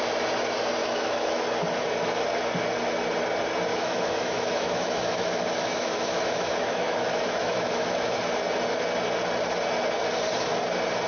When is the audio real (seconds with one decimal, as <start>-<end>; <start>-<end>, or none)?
0.0-0.8; 1.4-3.7; 8.2-11.1